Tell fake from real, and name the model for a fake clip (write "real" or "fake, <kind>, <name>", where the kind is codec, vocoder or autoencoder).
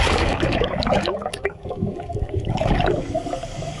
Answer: fake, codec, DAC